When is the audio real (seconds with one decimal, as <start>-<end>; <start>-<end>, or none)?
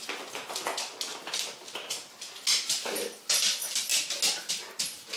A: 0.0-5.2